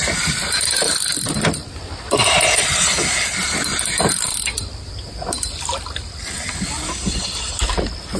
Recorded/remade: recorded